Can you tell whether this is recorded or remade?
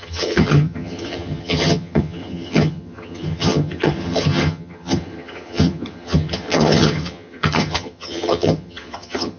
remade